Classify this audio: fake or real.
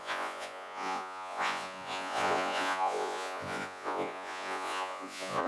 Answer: fake